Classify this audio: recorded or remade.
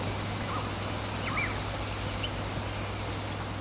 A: remade